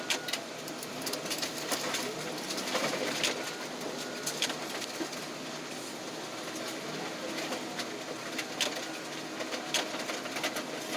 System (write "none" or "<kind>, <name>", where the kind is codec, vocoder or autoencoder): none